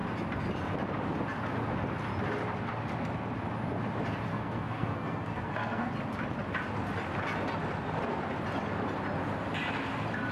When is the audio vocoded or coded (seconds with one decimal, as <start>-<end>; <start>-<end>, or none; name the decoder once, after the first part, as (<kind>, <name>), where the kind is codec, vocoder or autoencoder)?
4.3-5.9 (codec, SNAC)